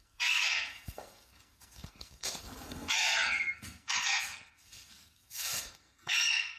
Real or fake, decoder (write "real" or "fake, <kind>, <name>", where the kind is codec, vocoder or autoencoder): fake, codec, SNAC